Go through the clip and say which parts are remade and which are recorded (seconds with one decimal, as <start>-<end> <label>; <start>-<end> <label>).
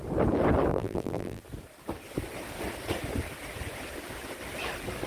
0.0-0.7 recorded; 0.7-1.4 remade; 1.4-5.1 recorded